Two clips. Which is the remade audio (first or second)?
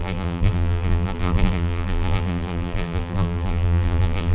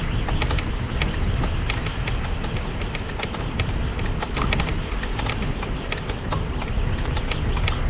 first